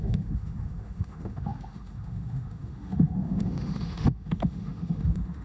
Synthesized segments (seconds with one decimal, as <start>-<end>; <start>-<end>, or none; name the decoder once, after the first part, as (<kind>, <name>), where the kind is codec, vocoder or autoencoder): 0.0-5.4 (autoencoder, DAC-VAE)